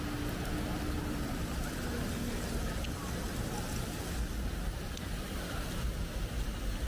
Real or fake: real